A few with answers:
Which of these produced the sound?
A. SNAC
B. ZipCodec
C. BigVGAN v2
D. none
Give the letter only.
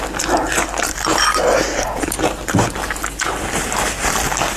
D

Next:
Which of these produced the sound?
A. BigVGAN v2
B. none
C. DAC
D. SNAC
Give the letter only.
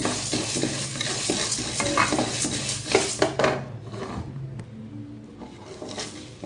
B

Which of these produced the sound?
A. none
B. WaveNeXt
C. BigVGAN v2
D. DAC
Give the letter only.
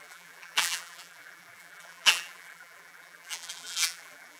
C